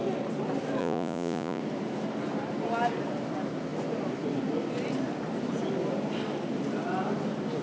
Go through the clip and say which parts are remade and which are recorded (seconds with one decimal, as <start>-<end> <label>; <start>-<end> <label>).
0.0-0.8 recorded; 0.8-1.6 remade; 1.6-7.6 recorded